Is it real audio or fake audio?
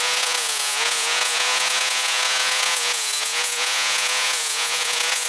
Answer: fake